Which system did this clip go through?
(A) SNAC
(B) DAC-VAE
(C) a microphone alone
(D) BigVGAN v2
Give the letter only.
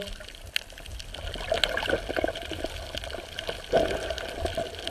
C